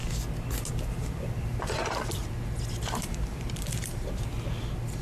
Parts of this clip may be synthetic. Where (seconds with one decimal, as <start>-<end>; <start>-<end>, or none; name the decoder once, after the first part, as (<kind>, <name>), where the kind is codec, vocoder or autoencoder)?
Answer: 0.7-2.2 (vocoder, BigVGAN v2); 2.8-4.3